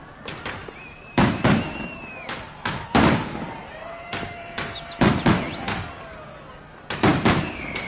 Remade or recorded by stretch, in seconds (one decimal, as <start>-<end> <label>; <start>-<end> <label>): 0.0-4.7 remade; 4.7-7.9 recorded